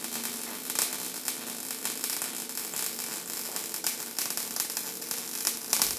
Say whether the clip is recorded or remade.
recorded